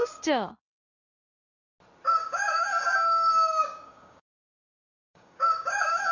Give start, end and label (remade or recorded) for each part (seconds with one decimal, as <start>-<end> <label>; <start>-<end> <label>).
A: 0.0-2.2 recorded; 2.2-6.1 remade